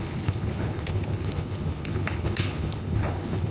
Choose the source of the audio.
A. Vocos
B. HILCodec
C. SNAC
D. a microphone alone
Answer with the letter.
B